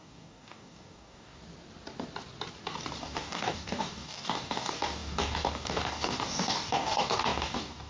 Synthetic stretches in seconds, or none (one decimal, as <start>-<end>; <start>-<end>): 0.0-1.4; 3.0-7.9